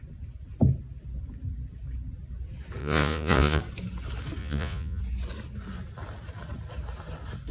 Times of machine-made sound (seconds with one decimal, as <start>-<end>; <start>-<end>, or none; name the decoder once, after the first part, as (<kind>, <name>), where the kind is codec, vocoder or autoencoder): 2.8-3.6 (vocoder, Vocos); 4.4-5.0